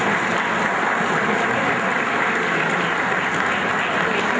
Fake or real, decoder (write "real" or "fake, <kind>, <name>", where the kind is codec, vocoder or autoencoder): real